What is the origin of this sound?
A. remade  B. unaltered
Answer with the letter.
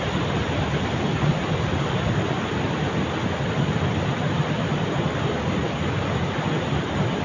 B